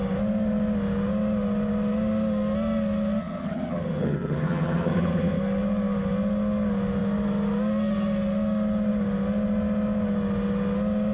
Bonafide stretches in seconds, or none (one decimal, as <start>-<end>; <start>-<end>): 0.0-3.2; 5.4-11.1